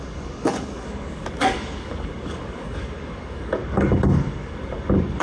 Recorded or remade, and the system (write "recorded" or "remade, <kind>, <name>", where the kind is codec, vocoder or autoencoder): remade, codec, DAC